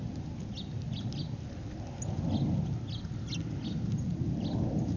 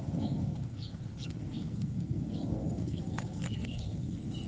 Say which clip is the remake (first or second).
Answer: second